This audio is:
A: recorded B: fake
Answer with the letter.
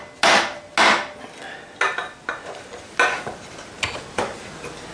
A